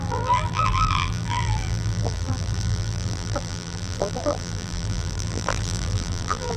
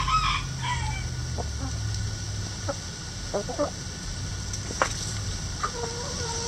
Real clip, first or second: second